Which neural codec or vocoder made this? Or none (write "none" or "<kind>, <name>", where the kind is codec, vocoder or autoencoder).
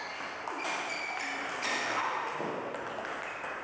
none